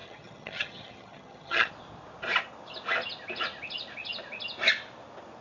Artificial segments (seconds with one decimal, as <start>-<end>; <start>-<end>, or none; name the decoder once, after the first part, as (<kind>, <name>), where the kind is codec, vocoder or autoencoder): 0.0-1.7 (vocoder, HiFi-GAN)